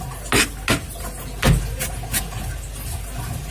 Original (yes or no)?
yes